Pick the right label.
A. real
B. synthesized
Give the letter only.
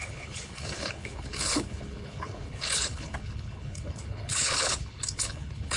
B